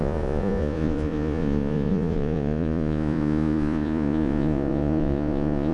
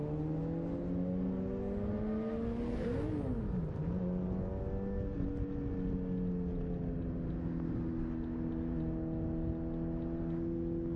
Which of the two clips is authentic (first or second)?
second